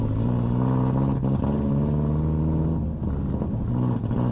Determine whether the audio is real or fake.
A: real